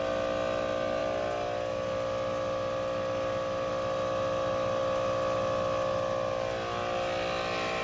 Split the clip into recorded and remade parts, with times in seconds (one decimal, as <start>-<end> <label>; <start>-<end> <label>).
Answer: 0.0-7.8 recorded